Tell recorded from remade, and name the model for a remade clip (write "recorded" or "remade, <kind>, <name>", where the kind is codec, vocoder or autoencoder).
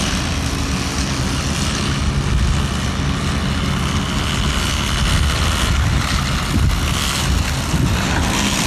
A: recorded